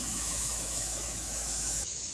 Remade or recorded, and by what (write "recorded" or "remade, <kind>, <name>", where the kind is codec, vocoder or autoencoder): remade, autoencoder, DAC-VAE